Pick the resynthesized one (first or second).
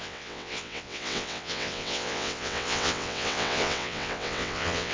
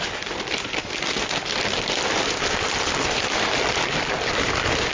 first